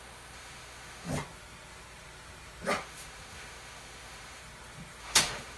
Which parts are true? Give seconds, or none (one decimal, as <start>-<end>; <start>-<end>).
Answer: 1.1-2.8; 4.4-5.0

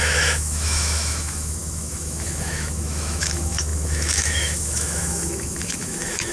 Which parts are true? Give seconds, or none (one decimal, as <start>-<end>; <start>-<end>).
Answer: none